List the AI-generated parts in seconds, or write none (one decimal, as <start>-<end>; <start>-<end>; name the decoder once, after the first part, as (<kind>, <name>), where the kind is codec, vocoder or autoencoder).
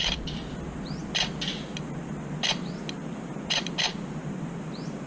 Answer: none